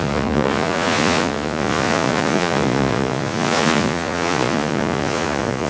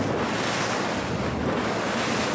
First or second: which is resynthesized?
first